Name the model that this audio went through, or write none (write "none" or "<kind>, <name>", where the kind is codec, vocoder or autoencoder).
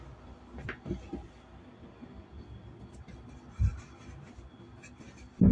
none